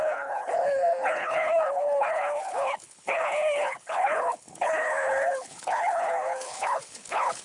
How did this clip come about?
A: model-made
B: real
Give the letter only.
A